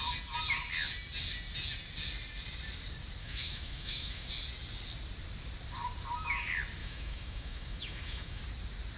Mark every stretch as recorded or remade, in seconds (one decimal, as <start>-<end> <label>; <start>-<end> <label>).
0.0-3.2 recorded; 3.2-4.3 remade; 4.3-6.8 recorded; 6.8-8.4 remade; 8.4-9.0 recorded